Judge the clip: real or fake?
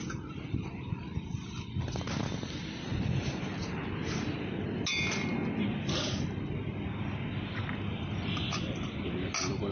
real